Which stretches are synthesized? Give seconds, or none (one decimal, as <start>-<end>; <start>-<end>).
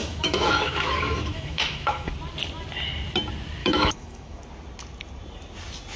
0.0-2.1; 3.6-4.4